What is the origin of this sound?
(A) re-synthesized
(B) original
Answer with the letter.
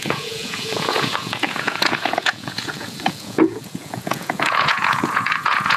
A